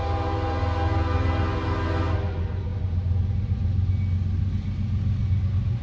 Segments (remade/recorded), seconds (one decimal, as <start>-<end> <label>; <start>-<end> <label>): 0.0-5.8 recorded